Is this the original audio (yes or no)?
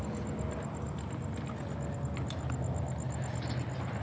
yes